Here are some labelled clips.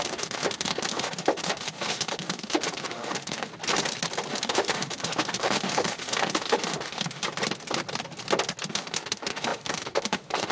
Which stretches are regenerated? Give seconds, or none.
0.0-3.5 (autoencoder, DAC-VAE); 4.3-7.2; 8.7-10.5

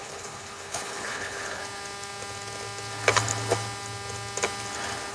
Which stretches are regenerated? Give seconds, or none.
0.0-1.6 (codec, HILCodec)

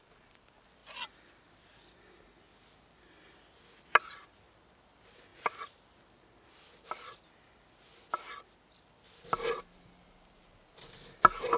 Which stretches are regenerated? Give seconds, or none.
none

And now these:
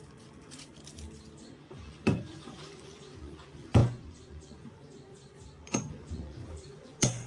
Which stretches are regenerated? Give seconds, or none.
0.0-0.7 (vocoder, Vocos); 1.4-7.3

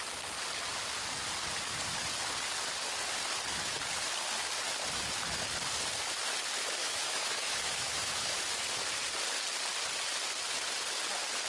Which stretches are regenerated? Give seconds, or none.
6.8-8.4 (autoencoder, DAC-VAE)

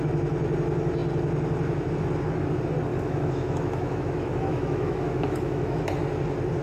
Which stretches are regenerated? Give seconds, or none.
2.9-5.8 (autoencoder, DAC-VAE)

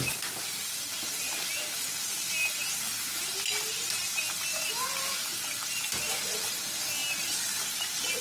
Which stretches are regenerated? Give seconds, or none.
none

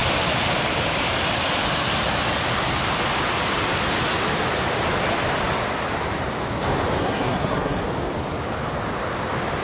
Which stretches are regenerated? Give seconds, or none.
7.0-7.8 (codec, SNAC)